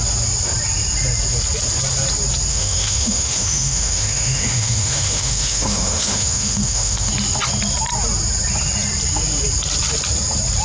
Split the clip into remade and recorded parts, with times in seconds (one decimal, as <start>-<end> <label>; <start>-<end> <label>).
0.0-2.5 recorded; 2.5-7.1 remade; 7.1-10.6 recorded